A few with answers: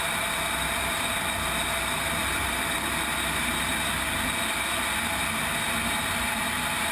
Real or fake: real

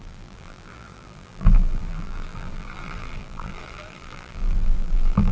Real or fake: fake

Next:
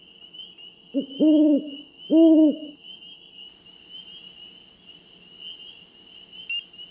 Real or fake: real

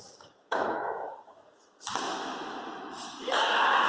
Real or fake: fake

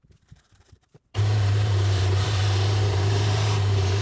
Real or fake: fake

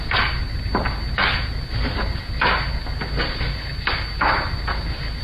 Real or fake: real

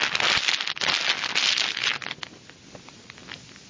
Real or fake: real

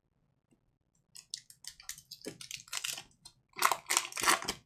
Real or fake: real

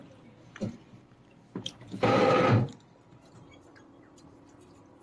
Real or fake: real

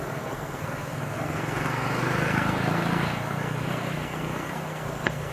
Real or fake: fake